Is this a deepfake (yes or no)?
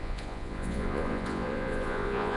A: yes